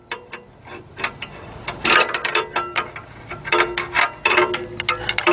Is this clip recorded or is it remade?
recorded